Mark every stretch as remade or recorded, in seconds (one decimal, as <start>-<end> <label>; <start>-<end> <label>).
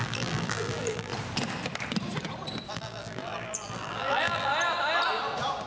0.0-1.1 remade; 1.1-2.7 recorded; 2.7-4.5 remade; 4.5-5.7 recorded